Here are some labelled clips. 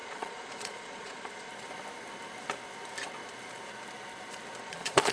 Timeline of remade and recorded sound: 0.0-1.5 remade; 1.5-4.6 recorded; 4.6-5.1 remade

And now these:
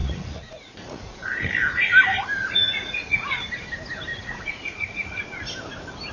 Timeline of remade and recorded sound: 0.0-1.5 remade; 1.5-2.4 recorded; 2.4-3.4 remade; 3.4-4.1 recorded; 4.1-5.2 remade; 5.2-6.1 recorded